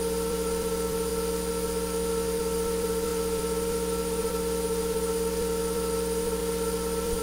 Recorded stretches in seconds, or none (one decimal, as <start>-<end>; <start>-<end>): 1.1-2.4